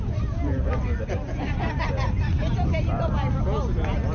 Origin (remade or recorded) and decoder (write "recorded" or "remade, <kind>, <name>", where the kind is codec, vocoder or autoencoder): recorded